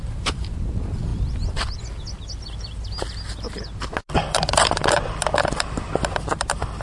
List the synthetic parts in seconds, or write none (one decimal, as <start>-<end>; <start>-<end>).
none